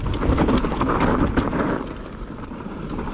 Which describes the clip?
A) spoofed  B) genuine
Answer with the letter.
B